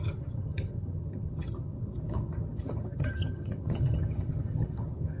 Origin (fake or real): fake